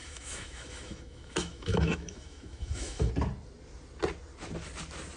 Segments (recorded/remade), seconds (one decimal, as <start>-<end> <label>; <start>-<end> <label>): 0.0-3.1 remade; 3.1-5.2 recorded